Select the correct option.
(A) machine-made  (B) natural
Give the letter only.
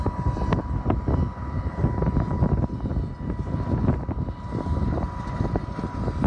B